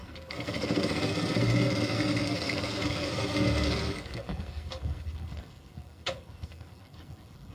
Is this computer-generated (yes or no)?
yes